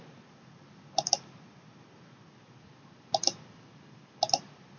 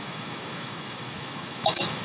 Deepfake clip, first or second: second